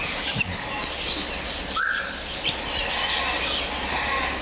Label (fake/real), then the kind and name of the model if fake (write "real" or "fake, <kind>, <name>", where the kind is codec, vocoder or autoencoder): real